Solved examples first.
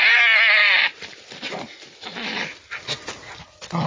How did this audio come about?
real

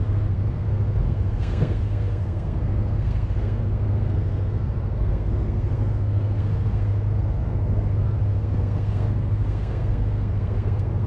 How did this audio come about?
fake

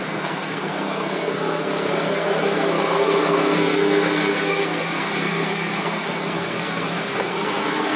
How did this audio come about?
fake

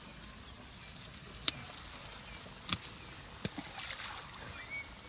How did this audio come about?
real